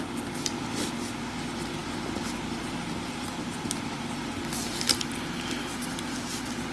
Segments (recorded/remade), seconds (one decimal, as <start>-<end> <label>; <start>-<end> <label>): 0.0-6.7 recorded